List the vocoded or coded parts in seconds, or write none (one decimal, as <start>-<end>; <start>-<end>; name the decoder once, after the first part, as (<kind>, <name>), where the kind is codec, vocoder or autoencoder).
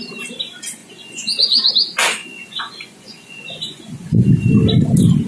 0.8-1.7 (vocoder, Vocos); 2.2-4.3